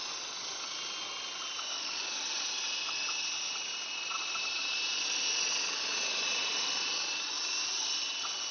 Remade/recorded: recorded